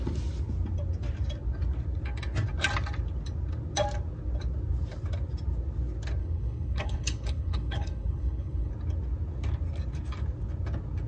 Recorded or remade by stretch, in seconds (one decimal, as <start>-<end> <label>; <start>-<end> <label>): 0.0-6.2 recorded; 6.2-8.7 remade; 8.7-11.1 recorded